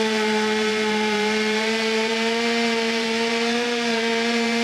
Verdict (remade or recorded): remade